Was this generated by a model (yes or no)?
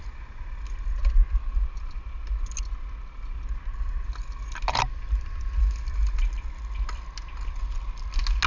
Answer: no